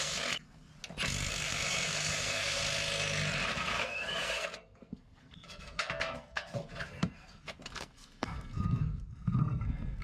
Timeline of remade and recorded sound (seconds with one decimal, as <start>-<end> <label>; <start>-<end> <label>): 0.0-0.7 remade; 0.7-1.3 recorded; 1.3-2.6 remade; 2.6-3.5 recorded; 3.5-10.0 remade

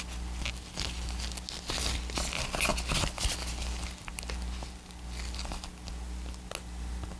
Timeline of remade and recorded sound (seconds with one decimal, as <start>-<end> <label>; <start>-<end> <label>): 0.0-7.2 recorded

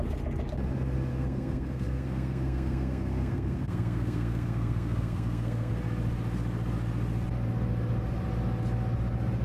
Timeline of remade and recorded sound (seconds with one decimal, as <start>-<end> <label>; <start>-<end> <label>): 0.0-1.1 recorded; 1.1-5.7 remade; 5.7-9.4 recorded

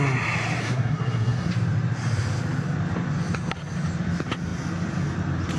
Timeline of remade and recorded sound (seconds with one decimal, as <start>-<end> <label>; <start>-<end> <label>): 0.0-0.6 recorded; 0.6-1.5 remade; 1.5-5.6 recorded